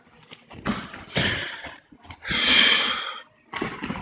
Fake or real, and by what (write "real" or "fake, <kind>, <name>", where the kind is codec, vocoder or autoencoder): real